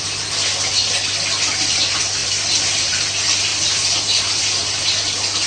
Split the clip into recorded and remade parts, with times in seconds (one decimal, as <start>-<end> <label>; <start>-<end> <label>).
0.0-5.5 recorded